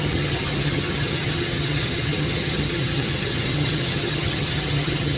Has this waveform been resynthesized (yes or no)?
yes